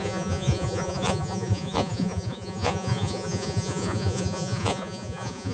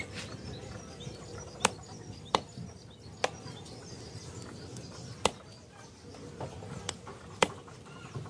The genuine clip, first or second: second